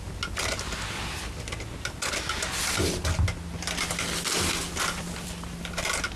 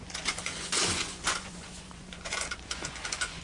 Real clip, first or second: first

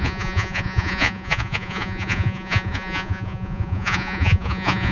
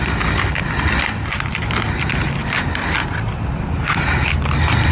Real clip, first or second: second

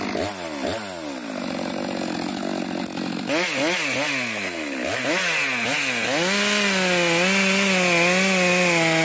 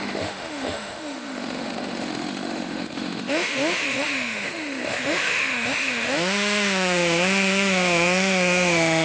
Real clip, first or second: first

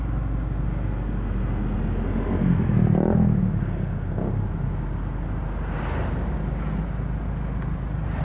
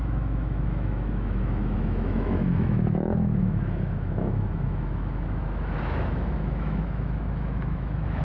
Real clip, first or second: first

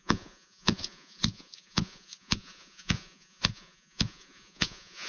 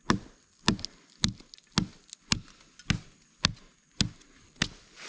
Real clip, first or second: second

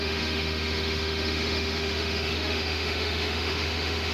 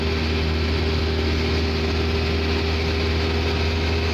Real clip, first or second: second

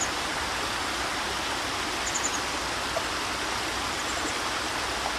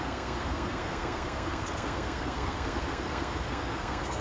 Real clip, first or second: first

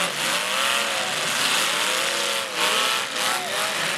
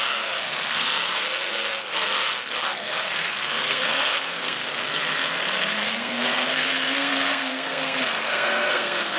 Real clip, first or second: first